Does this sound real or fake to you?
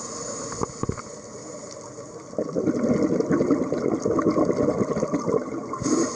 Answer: real